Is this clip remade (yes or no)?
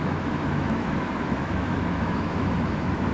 yes